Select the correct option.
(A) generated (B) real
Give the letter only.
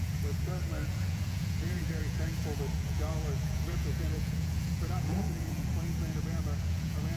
A